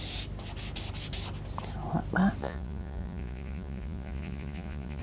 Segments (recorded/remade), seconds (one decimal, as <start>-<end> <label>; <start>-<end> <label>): 0.0-2.4 recorded; 2.4-5.0 remade